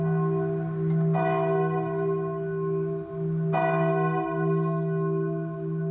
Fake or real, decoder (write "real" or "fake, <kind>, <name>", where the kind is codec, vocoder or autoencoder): real